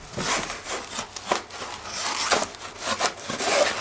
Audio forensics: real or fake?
real